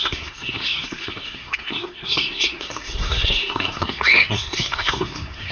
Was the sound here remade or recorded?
remade